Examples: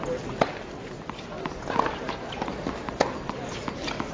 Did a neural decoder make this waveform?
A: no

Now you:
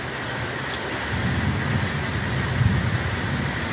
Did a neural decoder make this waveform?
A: no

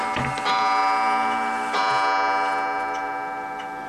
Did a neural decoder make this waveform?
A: no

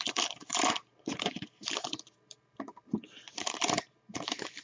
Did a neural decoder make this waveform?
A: yes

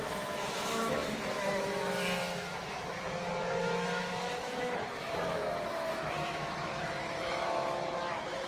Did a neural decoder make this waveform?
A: yes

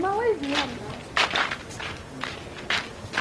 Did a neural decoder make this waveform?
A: no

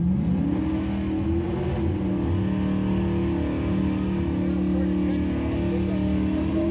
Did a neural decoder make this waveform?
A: no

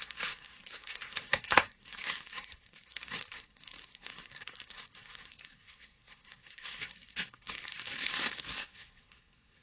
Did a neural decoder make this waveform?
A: yes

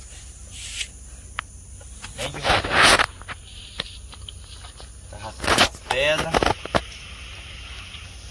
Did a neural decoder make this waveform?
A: no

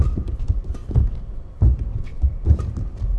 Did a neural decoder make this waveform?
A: no